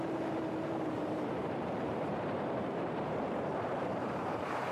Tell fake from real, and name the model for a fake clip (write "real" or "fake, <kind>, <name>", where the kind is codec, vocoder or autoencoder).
fake, vocoder, BigVGAN v2